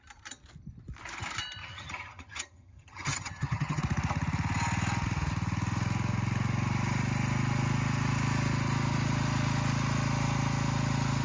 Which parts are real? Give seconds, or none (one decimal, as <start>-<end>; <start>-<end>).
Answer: 0.0-1.6; 3.8-11.2